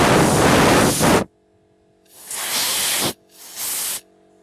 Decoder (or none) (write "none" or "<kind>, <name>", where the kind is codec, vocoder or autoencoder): none